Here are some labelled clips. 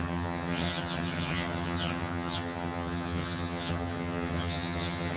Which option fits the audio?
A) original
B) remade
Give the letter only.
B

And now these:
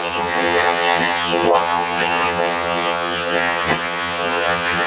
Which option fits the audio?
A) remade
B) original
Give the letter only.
A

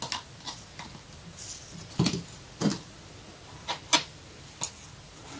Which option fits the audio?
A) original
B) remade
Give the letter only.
A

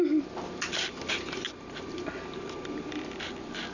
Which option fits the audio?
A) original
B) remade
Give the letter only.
A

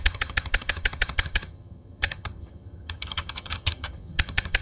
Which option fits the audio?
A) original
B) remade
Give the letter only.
B